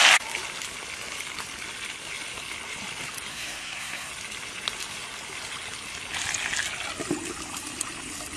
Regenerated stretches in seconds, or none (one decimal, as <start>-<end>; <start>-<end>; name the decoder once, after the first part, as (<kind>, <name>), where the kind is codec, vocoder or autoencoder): 3.3-4.1 (codec, SNAC)